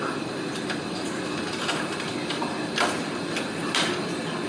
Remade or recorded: recorded